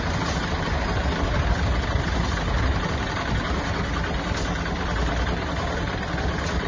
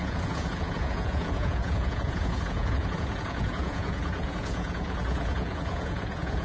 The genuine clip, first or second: first